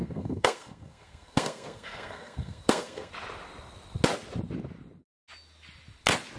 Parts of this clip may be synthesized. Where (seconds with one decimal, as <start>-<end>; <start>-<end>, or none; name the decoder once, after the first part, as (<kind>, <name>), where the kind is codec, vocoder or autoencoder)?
0.0-3.1 (codec, SNAC)

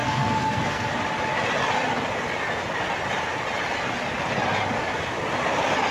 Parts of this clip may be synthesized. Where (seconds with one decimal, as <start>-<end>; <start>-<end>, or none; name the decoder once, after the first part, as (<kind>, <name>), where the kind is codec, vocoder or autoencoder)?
0.0-0.9 (codec, SNAC)

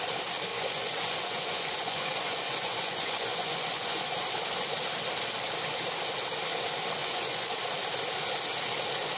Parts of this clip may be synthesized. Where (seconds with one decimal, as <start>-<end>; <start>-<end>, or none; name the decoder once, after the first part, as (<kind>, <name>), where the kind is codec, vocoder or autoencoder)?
0.5-4.1 (vocoder, Vocos); 7.0-7.5

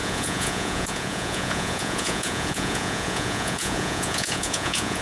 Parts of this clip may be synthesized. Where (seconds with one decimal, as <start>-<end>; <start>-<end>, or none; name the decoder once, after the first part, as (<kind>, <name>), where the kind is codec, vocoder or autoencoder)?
0.0-5.0 (vocoder, Vocos)